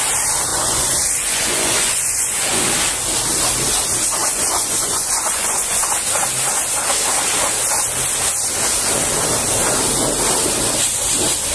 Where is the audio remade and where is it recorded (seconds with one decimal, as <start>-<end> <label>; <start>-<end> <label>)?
0.0-0.5 recorded; 0.5-2.7 remade; 2.7-4.2 recorded; 4.2-5.9 remade; 5.9-11.5 recorded